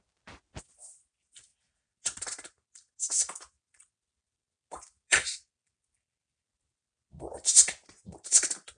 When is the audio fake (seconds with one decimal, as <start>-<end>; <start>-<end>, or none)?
none